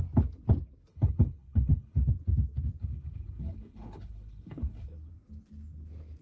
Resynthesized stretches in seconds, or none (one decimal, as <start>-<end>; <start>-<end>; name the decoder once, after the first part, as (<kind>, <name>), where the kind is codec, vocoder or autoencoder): 0.9-2.1 (codec, HILCodec); 2.8-5.1